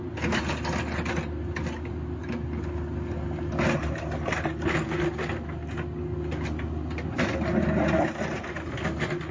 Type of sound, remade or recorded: recorded